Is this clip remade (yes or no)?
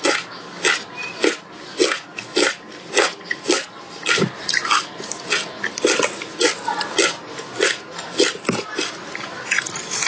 no